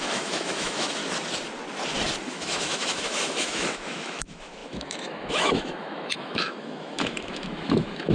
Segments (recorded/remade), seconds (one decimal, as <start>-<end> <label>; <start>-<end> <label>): 0.0-1.0 remade; 1.0-2.3 recorded; 2.3-8.1 remade